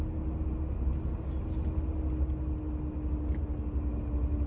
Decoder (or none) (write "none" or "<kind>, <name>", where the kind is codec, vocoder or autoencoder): none